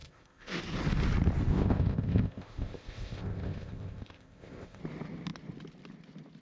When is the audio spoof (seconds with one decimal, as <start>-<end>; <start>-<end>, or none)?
0.0-0.6; 1.5-4.8